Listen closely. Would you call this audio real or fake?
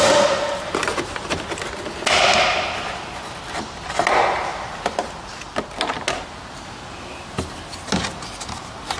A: real